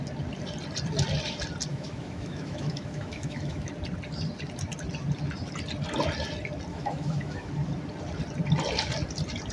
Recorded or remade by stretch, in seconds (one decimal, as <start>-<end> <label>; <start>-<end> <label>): 0.0-1.7 recorded; 1.7-3.7 remade; 3.7-6.7 recorded; 6.7-7.5 remade; 7.5-9.5 recorded